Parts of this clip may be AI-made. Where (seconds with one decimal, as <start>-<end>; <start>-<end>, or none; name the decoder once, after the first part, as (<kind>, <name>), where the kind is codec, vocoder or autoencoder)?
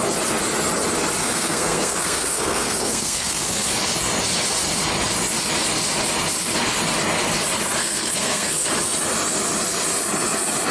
1.2-3.7 (codec, SNAC); 7.8-8.7